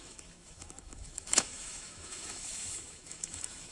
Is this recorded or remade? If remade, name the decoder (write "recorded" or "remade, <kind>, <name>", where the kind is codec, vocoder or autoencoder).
remade, autoencoder, DAC-VAE